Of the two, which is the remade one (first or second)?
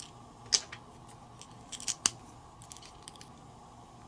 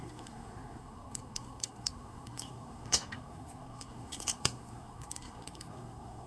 second